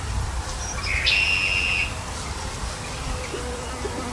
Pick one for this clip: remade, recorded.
recorded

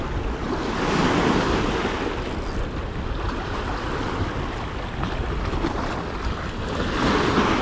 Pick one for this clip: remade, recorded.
recorded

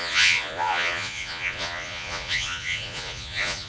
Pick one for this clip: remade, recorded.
remade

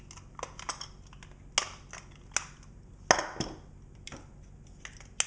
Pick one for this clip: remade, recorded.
recorded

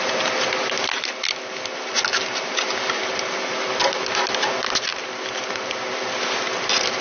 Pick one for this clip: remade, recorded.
recorded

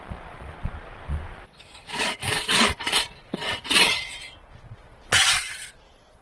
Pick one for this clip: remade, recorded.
remade